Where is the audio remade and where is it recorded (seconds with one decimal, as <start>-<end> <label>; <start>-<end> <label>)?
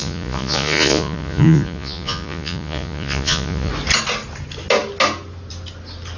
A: 0.0-3.7 remade; 3.7-6.2 recorded